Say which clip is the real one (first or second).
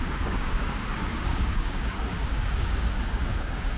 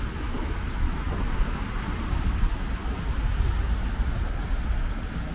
second